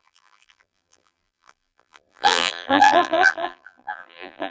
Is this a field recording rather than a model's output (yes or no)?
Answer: no